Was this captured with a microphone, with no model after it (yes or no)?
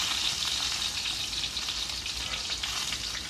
yes